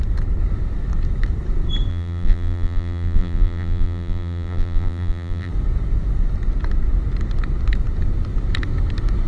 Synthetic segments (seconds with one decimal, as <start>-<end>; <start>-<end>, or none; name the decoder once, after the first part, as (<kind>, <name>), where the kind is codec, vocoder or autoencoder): 1.9-5.5 (vocoder, BigVGAN v2)